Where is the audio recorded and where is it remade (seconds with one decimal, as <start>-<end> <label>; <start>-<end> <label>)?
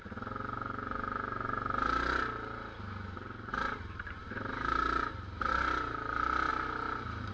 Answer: 0.0-3.5 recorded; 3.5-5.5 remade; 5.5-6.5 recorded; 6.5-7.3 remade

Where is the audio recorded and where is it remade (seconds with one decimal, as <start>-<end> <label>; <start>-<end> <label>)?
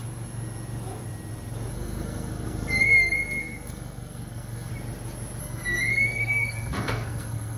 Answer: 0.0-1.7 recorded; 1.7-4.7 remade; 4.7-5.4 recorded; 5.4-7.6 remade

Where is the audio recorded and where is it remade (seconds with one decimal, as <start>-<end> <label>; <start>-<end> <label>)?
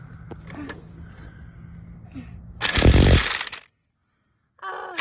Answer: 0.0-5.0 recorded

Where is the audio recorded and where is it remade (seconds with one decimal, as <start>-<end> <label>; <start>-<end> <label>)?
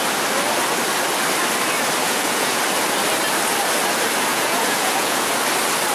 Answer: 0.0-2.0 recorded; 2.0-2.6 remade; 2.6-4.3 recorded; 4.3-5.3 remade; 5.3-5.9 recorded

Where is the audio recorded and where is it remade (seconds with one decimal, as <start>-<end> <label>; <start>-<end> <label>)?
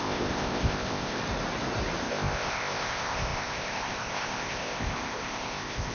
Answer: 0.0-1.2 remade; 1.2-2.0 recorded; 2.0-5.9 remade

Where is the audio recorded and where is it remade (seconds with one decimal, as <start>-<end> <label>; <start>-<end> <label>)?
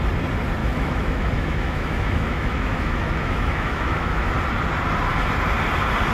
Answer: 0.0-0.6 recorded; 0.6-4.3 remade; 4.3-6.1 recorded